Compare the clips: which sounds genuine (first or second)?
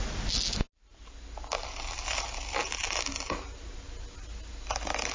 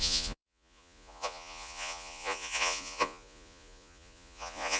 first